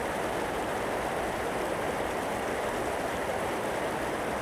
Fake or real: real